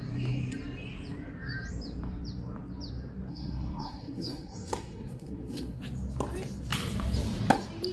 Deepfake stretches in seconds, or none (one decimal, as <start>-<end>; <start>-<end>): 3.3-5.8